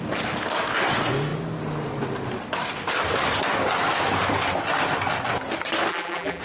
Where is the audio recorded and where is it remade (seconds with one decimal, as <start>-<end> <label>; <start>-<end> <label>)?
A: 0.0-5.9 recorded; 5.9-6.4 remade